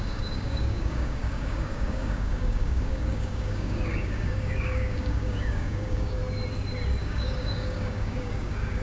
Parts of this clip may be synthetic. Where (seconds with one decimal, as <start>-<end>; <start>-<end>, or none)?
0.0-6.2; 7.0-8.8